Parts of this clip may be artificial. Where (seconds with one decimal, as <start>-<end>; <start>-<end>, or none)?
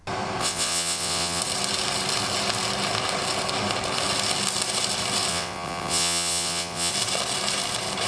0.4-1.4; 5.3-6.9